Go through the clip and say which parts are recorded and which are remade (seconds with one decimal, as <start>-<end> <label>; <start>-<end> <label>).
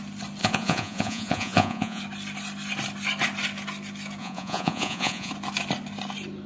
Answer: 0.0-0.4 recorded; 0.4-2.0 remade; 2.0-4.2 recorded; 4.2-5.3 remade; 5.3-6.5 recorded